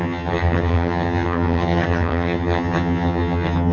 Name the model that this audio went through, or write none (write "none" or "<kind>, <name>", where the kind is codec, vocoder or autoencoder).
vocoder, HiFi-GAN